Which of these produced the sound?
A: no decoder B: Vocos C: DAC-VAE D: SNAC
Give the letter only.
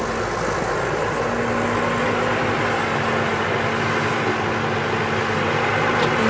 A